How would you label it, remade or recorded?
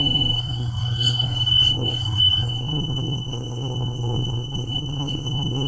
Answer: remade